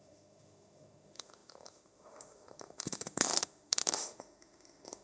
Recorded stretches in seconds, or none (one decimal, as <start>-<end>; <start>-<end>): none